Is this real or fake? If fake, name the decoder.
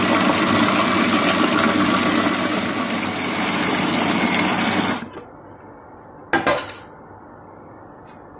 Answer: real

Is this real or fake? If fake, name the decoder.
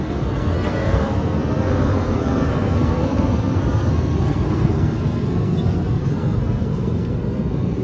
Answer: fake, codec, SNAC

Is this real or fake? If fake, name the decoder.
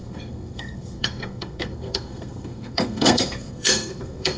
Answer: fake, codec, SNAC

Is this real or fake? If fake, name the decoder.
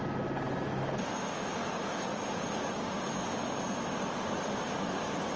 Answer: real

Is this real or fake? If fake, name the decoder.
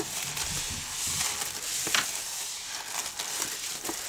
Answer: real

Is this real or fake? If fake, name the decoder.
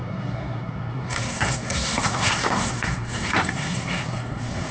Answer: fake, codec, SNAC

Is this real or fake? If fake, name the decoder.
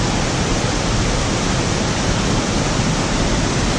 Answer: real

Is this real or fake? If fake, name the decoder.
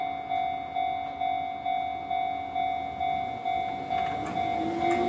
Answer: real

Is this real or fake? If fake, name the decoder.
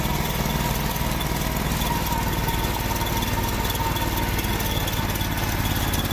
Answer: real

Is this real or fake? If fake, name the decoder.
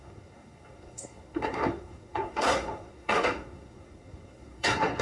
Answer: fake, codec, SNAC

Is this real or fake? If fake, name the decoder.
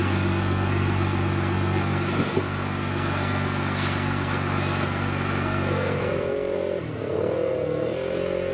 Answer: fake, codec, SNAC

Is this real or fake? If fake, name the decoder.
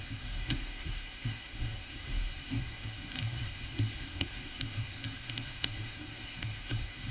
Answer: fake, codec, SNAC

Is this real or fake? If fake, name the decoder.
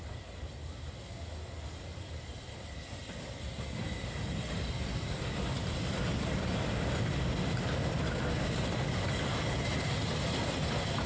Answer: real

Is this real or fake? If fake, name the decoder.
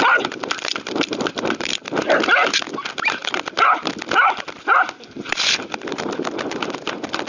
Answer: real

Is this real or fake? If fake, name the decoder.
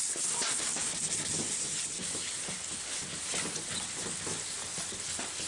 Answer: real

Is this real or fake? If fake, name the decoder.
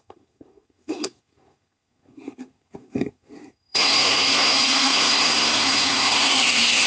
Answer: fake, codec, SNAC